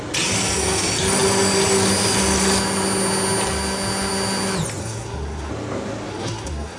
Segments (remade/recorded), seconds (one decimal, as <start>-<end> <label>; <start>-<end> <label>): 0.0-4.8 recorded; 4.8-5.5 remade; 5.5-6.1 recorded; 6.1-6.8 remade